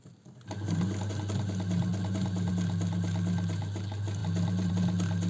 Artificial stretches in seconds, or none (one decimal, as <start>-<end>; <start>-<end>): none